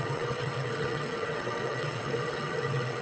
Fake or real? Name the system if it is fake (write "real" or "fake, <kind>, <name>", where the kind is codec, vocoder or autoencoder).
fake, vocoder, WaveNeXt